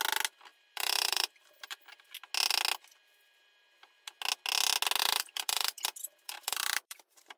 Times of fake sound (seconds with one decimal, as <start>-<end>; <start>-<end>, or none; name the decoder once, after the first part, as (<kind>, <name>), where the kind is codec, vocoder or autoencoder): 0.5-1.8 (vocoder, BigVGAN v2); 5.0-7.4